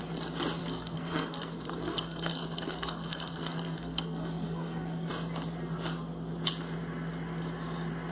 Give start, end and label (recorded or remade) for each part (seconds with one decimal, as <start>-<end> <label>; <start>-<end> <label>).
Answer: 0.0-0.6 recorded; 0.6-5.1 remade; 5.1-8.1 recorded